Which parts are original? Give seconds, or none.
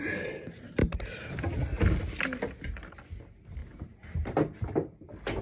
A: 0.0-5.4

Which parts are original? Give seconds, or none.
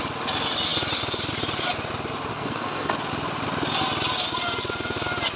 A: 0.0-2.3; 2.9-5.4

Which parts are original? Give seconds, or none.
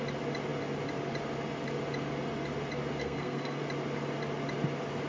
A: 0.0-3.0; 3.6-5.1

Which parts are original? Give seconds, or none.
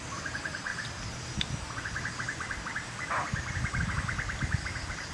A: 0.0-5.1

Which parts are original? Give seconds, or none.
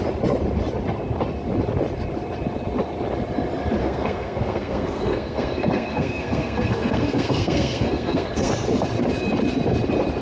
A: 0.0-3.8; 8.5-10.2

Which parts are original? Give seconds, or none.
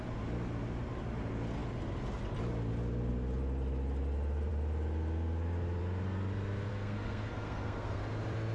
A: 0.0-6.7; 8.0-8.5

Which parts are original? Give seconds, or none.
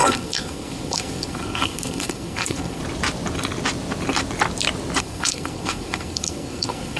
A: 2.8-5.0